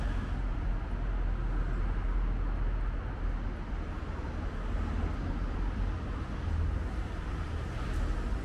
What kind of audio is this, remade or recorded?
recorded